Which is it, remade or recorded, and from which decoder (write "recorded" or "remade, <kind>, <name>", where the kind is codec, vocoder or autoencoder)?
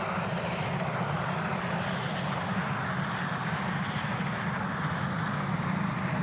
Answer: recorded